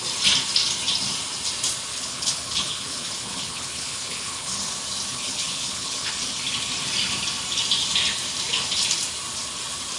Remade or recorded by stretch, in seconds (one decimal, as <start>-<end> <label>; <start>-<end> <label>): 0.0-1.9 recorded; 1.9-4.6 remade; 4.6-5.1 recorded; 5.1-6.1 remade; 6.1-10.0 recorded